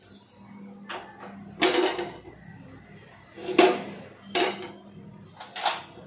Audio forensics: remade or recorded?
recorded